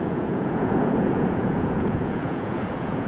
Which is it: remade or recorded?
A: remade